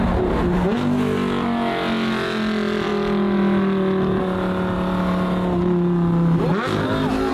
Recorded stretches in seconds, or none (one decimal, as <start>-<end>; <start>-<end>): 0.0-7.3